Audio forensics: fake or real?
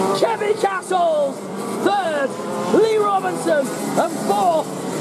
fake